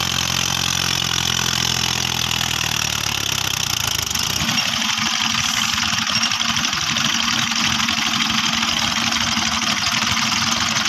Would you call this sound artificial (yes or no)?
no